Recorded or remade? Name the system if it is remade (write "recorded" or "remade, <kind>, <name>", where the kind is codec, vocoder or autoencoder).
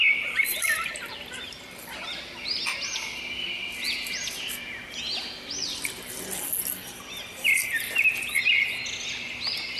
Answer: recorded